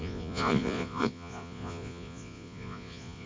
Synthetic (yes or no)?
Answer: yes